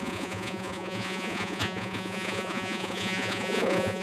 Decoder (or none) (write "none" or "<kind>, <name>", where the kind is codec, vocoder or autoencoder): vocoder, Vocos